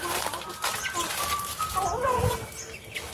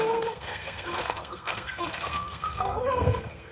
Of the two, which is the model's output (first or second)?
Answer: second